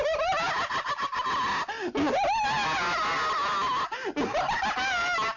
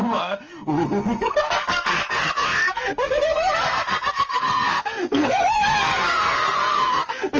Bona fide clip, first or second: first